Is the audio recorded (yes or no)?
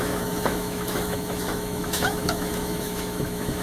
no